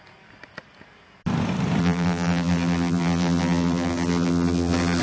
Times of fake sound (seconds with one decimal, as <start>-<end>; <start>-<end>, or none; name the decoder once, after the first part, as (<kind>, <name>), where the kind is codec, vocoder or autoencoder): 1.8-5.0 (vocoder, BigVGAN v2)